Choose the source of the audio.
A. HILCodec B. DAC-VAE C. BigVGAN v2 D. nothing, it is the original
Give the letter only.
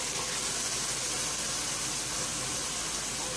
D